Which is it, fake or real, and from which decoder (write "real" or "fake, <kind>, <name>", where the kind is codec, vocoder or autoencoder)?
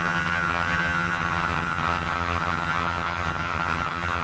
fake, vocoder, HiFi-GAN